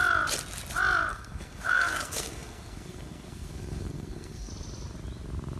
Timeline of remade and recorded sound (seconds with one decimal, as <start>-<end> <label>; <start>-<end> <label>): 0.0-1.1 recorded; 1.1-4.5 remade; 4.5-5.6 recorded